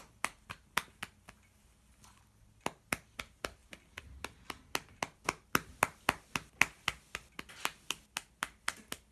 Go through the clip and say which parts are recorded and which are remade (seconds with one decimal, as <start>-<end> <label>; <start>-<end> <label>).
0.0-9.1 recorded